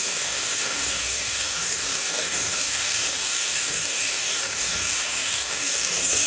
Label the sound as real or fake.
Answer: fake